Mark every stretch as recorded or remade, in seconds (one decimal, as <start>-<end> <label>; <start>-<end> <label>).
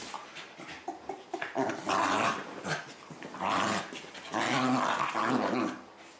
0.0-6.2 recorded